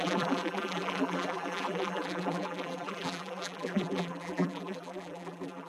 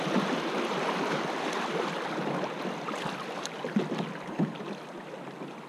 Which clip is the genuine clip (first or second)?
second